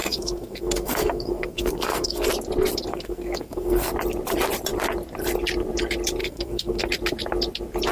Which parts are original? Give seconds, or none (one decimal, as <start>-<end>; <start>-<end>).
2.3-2.9; 3.9-6.2; 6.9-7.9